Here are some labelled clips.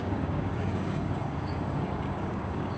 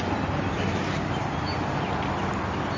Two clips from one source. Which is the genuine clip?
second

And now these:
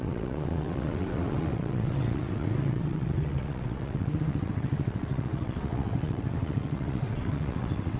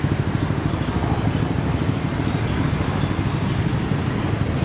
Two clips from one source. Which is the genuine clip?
second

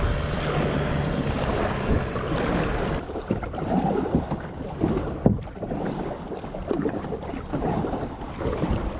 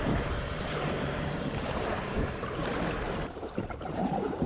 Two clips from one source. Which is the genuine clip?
first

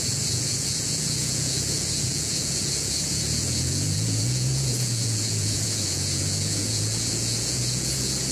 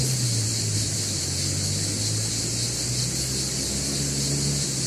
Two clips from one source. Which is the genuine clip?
second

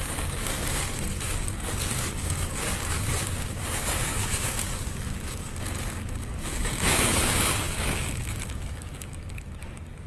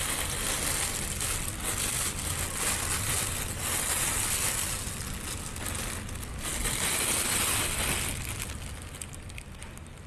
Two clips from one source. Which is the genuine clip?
second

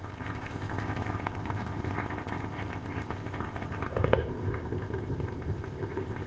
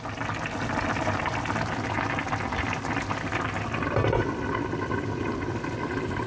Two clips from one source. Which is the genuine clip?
second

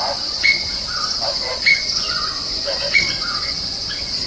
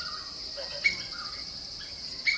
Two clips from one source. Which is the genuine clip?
second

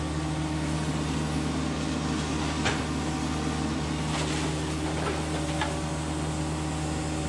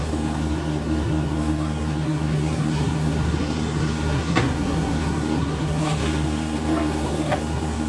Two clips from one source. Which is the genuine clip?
first